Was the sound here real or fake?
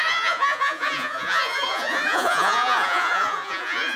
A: fake